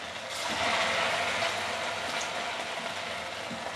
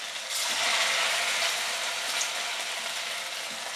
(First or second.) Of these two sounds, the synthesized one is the second